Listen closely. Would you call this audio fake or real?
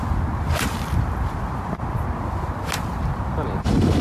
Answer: real